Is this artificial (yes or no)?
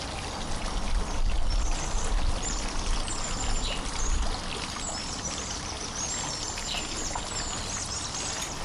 no